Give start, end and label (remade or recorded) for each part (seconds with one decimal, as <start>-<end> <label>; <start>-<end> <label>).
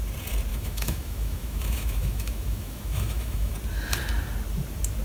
0.0-0.5 recorded; 0.5-3.5 remade; 3.5-5.0 recorded